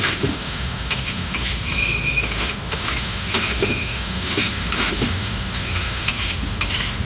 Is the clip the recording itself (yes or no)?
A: no